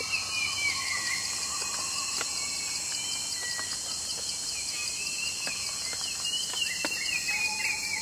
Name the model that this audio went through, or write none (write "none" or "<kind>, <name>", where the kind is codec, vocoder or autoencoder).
none